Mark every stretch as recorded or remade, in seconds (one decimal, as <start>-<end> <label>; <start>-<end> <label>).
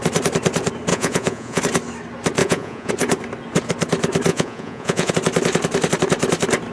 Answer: 0.0-0.9 recorded; 0.9-1.6 remade; 1.6-2.4 recorded; 2.4-2.9 remade; 2.9-4.3 recorded; 4.3-5.1 remade; 5.1-6.7 recorded